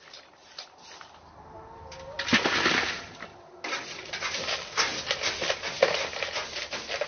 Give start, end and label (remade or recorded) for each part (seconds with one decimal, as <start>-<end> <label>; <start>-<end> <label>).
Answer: 0.0-7.1 recorded